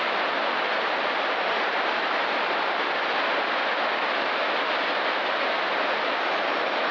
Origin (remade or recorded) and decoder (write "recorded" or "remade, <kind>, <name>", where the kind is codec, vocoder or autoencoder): recorded